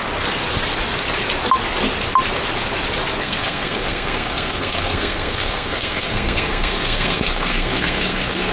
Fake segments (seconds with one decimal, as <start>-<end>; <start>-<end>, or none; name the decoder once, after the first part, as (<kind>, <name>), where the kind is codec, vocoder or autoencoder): 3.2-8.5 (codec, SNAC)